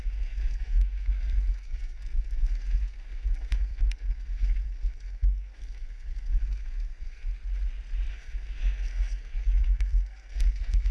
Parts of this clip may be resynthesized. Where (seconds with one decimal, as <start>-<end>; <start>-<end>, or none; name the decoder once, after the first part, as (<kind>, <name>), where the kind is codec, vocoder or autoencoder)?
0.0-7.3 (codec, SNAC); 8.1-10.9